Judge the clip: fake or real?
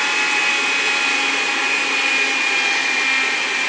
real